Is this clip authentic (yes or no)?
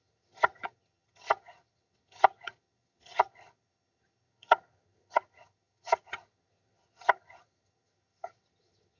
no